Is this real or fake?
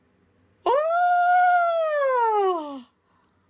real